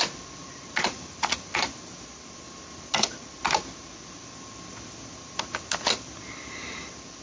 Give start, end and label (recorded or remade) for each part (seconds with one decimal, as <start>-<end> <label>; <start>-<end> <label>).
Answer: 0.0-7.2 recorded